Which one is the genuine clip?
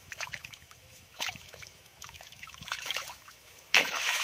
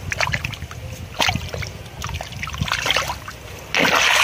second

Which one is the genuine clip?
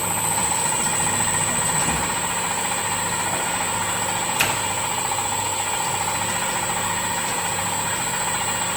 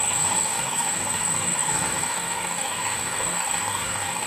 first